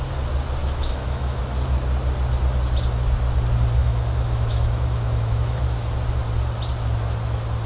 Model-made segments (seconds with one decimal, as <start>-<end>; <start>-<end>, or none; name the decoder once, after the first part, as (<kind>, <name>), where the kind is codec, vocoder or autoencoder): 0.6-1.4 (autoencoder, DAC-VAE); 3.8-5.6